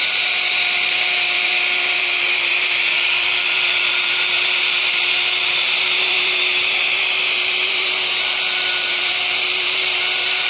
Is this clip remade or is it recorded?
remade